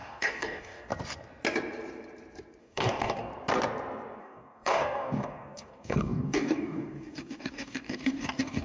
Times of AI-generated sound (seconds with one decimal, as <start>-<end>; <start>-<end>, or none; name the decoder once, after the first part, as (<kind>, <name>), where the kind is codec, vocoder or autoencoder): 0.0-0.9 (codec, DAC); 2.6-3.3; 4.2-8.6

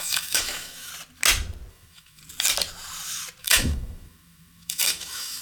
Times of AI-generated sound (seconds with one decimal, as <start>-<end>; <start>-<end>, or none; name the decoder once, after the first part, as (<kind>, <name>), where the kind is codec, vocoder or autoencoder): 0.0-0.9 (autoencoder, DAC-VAE); 1.7-2.2; 3.4-5.4

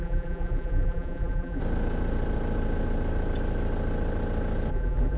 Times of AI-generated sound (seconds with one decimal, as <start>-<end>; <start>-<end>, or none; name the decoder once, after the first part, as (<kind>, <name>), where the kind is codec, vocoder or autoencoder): 0.0-1.6 (vocoder, BigVGAN v2); 4.7-5.2

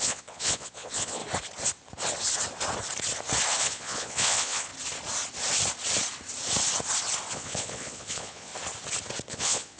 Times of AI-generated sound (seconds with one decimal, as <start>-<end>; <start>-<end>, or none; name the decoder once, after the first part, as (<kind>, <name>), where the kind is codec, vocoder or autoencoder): 0.0-1.2 (vocoder, Vocos); 3.6-4.7; 7.3-8.5; 9.3-9.8